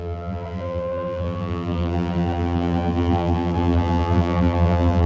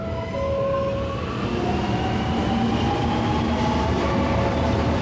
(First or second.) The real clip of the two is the second